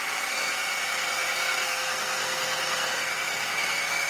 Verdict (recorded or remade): remade